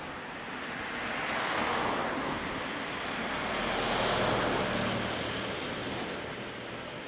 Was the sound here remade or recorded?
recorded